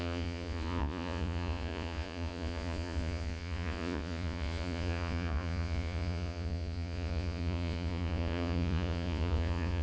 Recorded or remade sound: remade